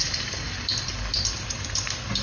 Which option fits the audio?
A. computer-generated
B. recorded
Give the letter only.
A